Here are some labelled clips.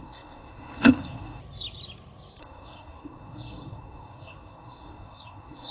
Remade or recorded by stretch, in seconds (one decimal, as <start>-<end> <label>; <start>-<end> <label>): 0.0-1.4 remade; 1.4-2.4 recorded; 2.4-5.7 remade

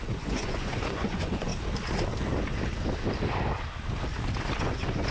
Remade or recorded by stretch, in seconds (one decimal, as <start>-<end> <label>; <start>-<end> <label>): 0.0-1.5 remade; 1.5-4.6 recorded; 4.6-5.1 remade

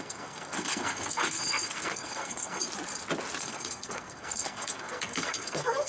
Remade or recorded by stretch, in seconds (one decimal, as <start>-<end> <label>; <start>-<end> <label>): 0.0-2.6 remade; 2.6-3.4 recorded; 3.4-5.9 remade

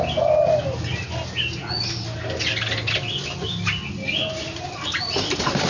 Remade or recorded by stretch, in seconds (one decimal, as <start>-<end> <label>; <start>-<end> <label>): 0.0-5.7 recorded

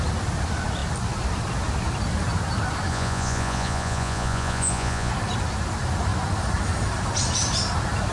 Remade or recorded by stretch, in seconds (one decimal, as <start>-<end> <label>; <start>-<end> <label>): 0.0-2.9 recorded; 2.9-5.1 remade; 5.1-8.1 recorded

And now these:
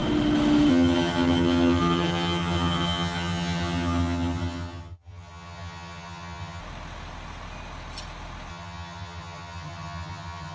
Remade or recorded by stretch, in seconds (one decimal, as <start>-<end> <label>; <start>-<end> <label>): 0.0-0.7 recorded; 0.7-6.6 remade; 6.6-8.5 recorded; 8.5-10.5 remade

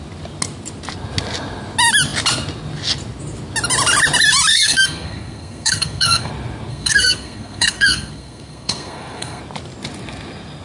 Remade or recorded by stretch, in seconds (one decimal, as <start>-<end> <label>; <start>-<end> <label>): 0.0-4.5 recorded; 4.5-6.3 remade; 6.3-6.7 recorded; 6.7-9.4 remade; 9.4-10.6 recorded